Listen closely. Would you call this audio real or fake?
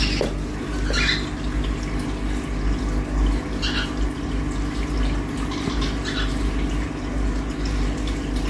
real